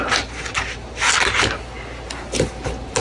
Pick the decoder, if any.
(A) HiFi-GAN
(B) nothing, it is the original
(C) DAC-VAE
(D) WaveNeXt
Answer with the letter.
B